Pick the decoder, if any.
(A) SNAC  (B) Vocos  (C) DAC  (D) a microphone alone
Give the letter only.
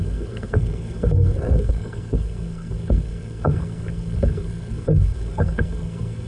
A